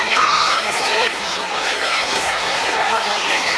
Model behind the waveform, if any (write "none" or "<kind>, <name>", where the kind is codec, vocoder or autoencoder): codec, SNAC